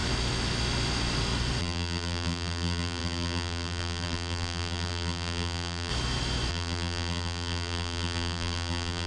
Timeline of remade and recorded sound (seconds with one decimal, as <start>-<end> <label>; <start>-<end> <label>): 0.0-1.6 recorded; 1.6-5.9 remade; 5.9-6.5 recorded; 6.5-9.1 remade